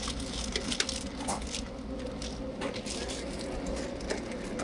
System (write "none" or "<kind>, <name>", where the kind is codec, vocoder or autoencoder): none